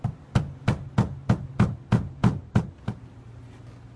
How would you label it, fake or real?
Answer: real